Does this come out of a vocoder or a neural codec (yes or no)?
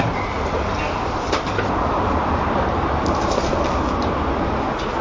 no